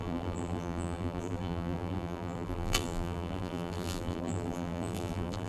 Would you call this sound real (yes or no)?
no